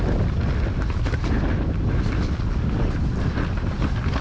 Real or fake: real